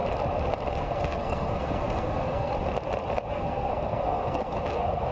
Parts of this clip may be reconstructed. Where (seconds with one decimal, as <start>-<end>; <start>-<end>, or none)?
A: 0.7-2.5; 3.3-5.1